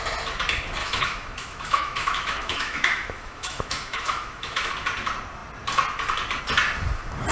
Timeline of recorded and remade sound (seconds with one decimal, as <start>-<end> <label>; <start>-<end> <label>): 0.0-0.8 recorded; 0.8-4.7 remade; 4.7-7.3 recorded